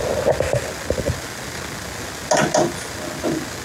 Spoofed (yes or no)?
no